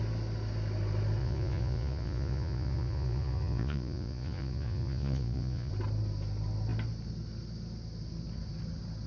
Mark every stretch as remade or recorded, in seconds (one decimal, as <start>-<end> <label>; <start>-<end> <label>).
0.0-1.2 recorded; 1.2-5.7 remade; 5.7-9.1 recorded